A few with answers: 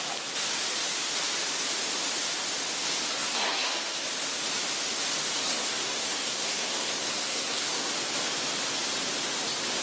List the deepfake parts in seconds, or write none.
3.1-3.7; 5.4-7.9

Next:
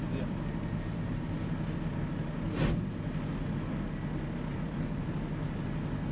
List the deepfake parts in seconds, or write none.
4.5-5.1

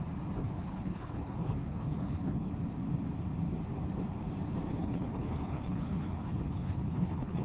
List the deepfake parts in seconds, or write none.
0.4-2.5; 4.7-7.4

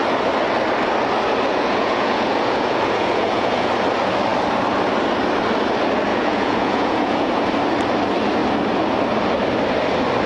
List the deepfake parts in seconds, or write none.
1.5-3.7; 6.1-7.5

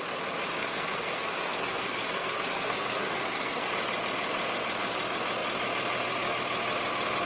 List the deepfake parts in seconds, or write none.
0.6-3.7